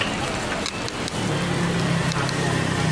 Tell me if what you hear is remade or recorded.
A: recorded